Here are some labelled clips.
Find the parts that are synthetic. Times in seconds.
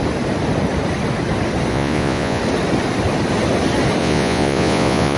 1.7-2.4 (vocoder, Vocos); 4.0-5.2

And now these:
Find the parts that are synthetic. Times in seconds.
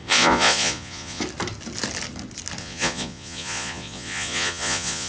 0.0-1.2 (vocoder, Vocos); 2.6-5.1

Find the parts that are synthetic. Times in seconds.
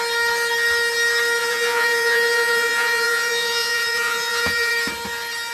1.4-4.7 (vocoder, Vocos)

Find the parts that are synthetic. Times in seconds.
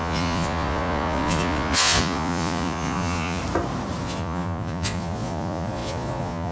0.0-3.4 (vocoder, Vocos); 4.0-6.5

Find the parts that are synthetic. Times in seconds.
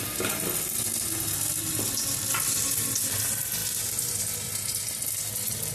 none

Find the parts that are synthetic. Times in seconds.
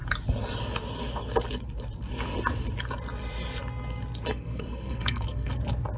4.3-5.5 (codec, SNAC)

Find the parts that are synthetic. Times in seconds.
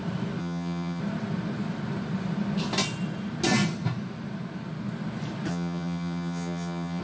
0.4-1.0 (vocoder, HiFi-GAN); 5.5-7.0